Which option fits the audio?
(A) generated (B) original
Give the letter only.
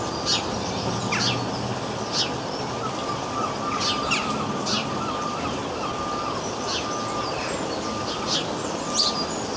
B